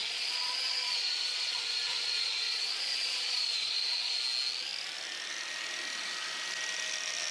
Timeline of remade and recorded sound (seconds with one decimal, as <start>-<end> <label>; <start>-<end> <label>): 0.0-4.2 remade; 4.2-7.3 recorded